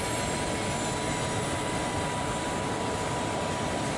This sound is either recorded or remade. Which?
recorded